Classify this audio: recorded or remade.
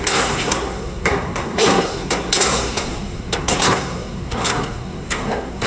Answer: remade